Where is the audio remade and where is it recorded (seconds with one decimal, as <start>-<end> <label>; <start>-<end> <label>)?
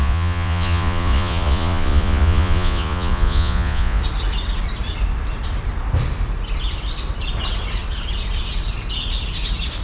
0.0-4.0 remade; 4.0-9.8 recorded